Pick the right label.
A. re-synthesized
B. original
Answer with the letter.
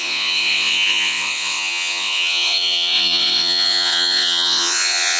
A